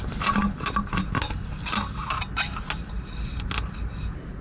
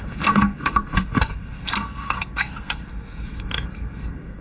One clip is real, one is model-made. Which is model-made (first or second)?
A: second